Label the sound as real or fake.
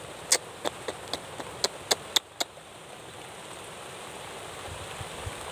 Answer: real